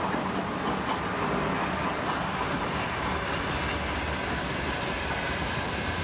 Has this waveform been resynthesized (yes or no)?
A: no